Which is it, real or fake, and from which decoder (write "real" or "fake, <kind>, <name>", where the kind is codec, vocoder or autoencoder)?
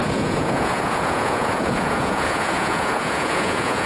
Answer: fake, vocoder, Vocos